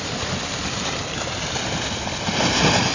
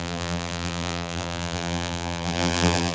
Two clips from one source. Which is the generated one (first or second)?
second